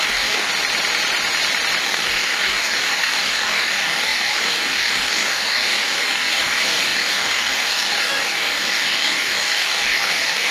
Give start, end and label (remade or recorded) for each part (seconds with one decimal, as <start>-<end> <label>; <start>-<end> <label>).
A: 0.0-0.5 remade; 0.5-1.8 recorded; 1.8-10.5 remade